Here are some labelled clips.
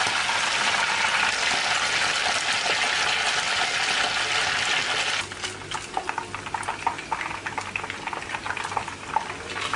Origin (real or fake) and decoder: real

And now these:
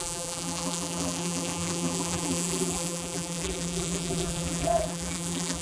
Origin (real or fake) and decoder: fake, vocoder, BigVGAN v2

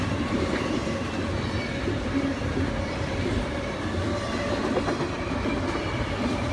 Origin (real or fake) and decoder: fake, vocoder, BigVGAN v2